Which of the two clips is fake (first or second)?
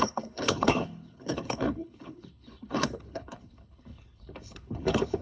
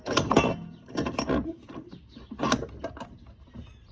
first